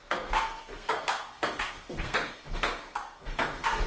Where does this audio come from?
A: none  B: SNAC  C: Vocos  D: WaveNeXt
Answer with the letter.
B